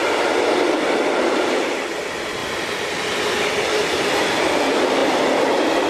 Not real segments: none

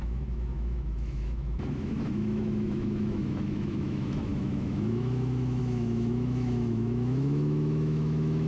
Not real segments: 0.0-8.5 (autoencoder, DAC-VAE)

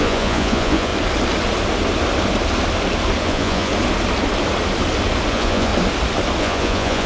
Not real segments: 0.0-0.9 (vocoder, Vocos); 3.2-3.7; 5.3-5.7; 6.4-7.1

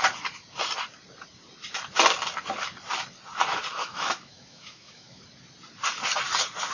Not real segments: 3.8-5.2 (autoencoder, DAC-VAE)